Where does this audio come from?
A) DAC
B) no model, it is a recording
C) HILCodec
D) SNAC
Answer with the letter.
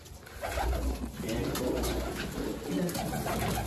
B